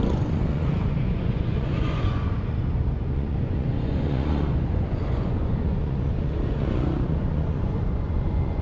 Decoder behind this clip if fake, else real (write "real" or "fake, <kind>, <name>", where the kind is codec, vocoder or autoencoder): fake, vocoder, Vocos